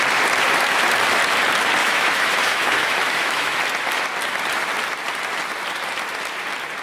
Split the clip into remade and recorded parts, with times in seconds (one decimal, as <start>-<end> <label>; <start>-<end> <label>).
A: 0.0-1.8 recorded; 1.8-3.6 remade; 3.6-6.8 recorded